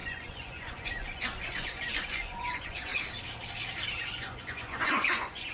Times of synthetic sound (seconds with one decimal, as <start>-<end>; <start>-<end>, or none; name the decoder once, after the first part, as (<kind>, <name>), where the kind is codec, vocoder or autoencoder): 0.0-2.9 (vocoder, Vocos); 4.0-5.5